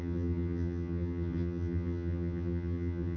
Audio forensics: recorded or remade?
remade